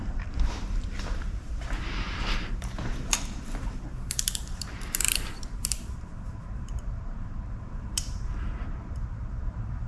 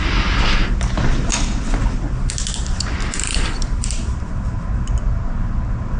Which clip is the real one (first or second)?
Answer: second